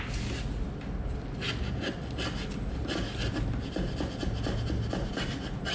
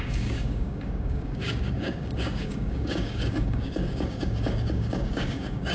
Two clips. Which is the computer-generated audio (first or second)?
second